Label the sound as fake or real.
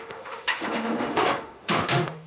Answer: fake